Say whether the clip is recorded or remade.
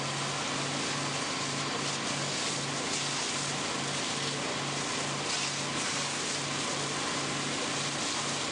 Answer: recorded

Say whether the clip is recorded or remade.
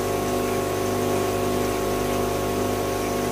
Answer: recorded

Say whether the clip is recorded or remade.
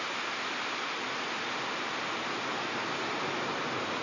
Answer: recorded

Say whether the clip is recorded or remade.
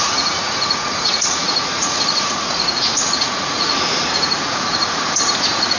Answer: remade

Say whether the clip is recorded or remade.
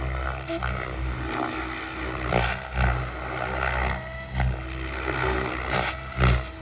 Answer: recorded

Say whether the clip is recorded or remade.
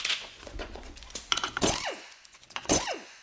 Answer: remade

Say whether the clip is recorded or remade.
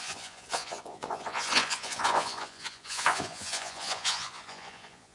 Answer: remade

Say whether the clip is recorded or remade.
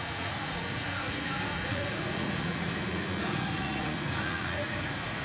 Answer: remade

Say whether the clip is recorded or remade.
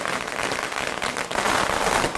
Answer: recorded